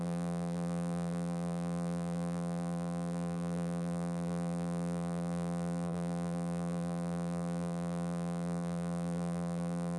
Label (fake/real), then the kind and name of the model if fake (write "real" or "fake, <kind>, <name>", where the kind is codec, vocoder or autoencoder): fake, vocoder, BigVGAN v2